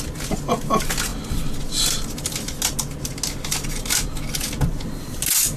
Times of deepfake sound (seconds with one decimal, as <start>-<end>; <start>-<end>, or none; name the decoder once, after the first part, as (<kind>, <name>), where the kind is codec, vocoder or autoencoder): none